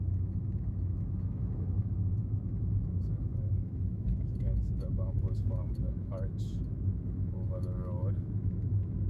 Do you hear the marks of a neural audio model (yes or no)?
yes